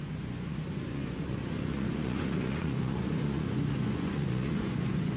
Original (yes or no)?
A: no